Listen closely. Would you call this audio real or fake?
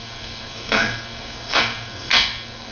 fake